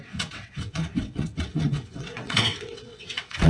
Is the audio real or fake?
fake